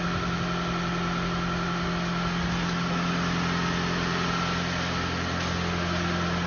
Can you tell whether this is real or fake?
real